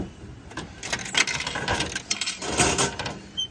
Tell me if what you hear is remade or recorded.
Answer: recorded